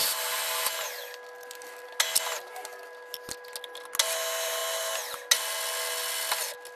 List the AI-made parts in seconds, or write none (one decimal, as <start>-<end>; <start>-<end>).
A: none